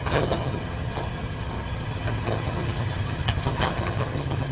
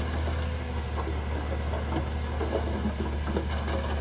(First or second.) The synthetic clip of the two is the first